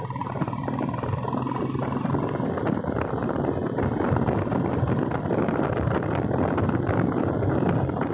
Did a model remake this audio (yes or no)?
no